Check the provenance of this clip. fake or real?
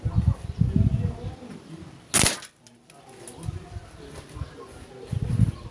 real